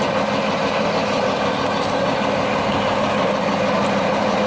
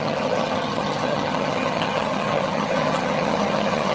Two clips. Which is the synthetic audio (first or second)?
second